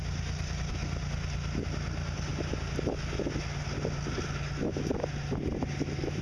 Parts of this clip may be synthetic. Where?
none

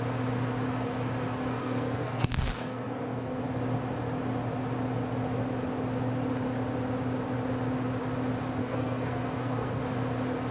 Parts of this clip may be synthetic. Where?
1.6-3.4 (codec, SNAC); 8.6-9.8

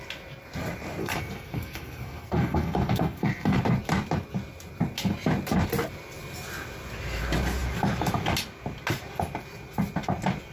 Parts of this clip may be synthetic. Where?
1.0-3.6 (codec, SNAC)

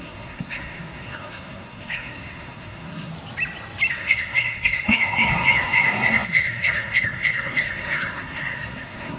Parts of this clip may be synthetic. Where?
0.0-3.1 (codec, SNAC); 3.9-9.2

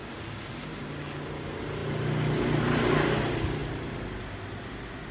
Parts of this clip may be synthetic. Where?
none